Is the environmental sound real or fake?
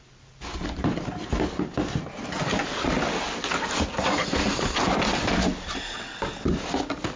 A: real